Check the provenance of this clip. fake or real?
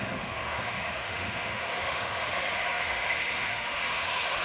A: fake